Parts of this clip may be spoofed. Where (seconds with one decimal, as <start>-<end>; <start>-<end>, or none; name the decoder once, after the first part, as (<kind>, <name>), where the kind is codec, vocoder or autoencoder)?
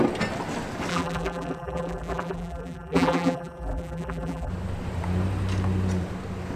0.9-4.5 (vocoder, BigVGAN v2)